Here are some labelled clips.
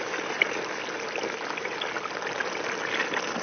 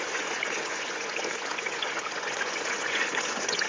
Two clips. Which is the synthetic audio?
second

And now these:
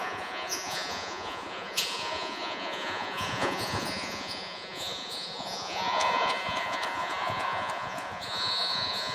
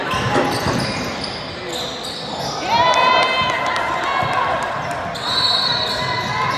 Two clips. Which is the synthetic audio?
first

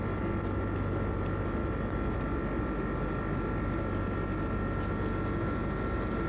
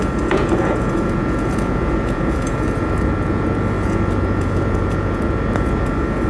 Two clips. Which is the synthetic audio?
second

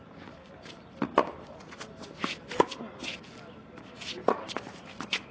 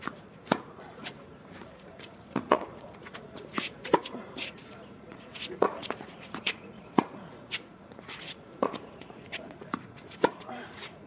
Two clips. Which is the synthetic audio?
second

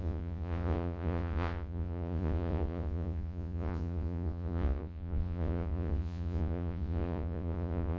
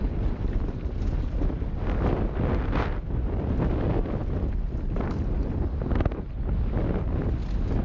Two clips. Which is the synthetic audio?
first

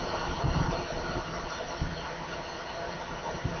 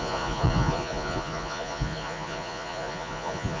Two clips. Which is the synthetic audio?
second